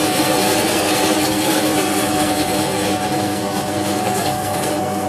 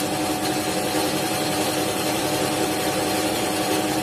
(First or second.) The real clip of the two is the second